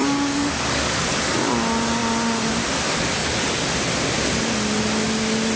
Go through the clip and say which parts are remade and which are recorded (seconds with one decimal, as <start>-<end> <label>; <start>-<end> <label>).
0.0-1.5 remade; 1.5-5.6 recorded